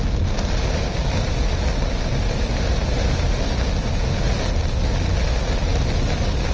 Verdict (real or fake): real